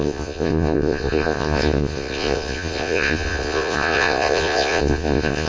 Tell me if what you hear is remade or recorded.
remade